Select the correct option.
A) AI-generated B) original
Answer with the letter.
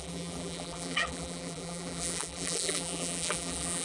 A